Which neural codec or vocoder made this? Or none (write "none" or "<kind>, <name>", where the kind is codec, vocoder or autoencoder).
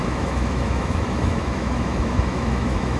autoencoder, DAC-VAE